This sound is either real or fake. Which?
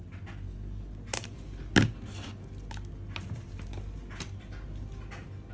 real